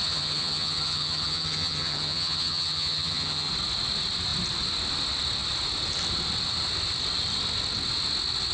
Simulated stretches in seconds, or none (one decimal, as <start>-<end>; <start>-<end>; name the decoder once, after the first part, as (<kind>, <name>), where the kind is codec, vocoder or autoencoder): 0.0-3.5 (vocoder, HiFi-GAN)